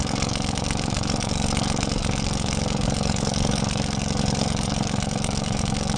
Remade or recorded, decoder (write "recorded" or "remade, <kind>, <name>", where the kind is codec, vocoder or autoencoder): remade, codec, DAC